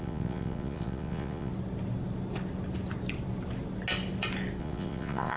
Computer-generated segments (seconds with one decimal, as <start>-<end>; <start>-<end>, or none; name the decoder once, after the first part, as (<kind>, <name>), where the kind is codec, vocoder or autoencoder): 0.0-1.5 (vocoder, Vocos); 4.6-5.4